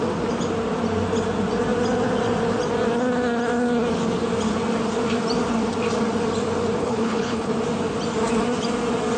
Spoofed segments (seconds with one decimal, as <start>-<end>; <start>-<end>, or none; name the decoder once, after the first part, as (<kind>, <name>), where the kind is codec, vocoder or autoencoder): 6.8-7.5 (codec, HILCodec)